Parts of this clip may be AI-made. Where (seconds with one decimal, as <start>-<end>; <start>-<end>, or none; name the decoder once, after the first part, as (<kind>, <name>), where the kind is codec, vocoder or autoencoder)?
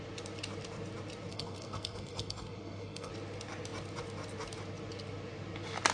1.3-3.1 (codec, SNAC)